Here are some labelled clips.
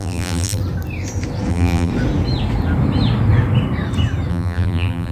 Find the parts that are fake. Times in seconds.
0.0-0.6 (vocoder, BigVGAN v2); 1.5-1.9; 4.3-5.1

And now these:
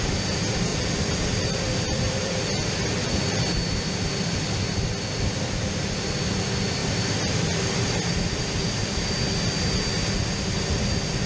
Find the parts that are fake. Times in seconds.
0.7-4.1 (vocoder, BigVGAN v2); 6.8-9.1

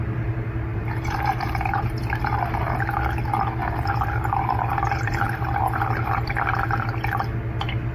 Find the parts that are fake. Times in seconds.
0.7-2.8 (vocoder, BigVGAN v2); 3.6-6.3

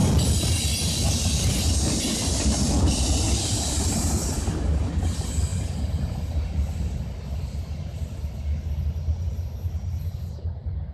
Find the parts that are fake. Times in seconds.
0.0-3.9 (vocoder, BigVGAN v2); 5.5-6.2